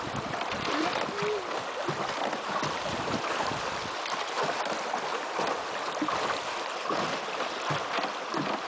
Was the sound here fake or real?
real